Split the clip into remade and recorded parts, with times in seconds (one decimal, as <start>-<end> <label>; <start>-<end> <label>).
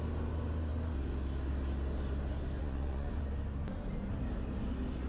0.0-2.6 recorded; 2.6-3.2 remade; 3.2-5.1 recorded